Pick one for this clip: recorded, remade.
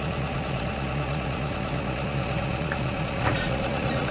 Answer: remade